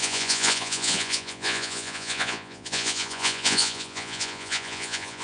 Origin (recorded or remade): remade